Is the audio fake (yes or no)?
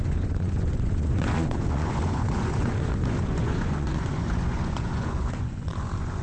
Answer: yes